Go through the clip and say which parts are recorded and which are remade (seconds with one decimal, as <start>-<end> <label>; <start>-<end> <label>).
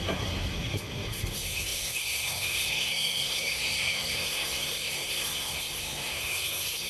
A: 0.0-6.9 remade